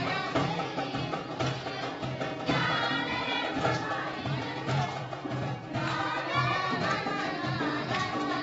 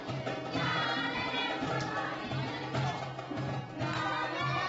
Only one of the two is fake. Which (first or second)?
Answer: first